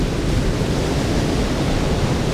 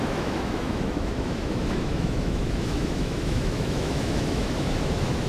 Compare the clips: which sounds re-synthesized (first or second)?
second